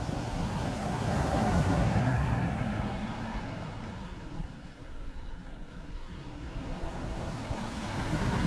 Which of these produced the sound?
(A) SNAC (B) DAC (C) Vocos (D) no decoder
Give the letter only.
A